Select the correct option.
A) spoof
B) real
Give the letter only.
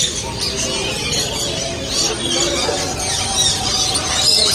B